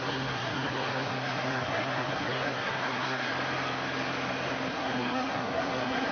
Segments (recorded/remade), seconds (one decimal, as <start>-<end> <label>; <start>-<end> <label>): 0.0-3.3 remade; 3.3-4.7 recorded; 4.7-6.1 remade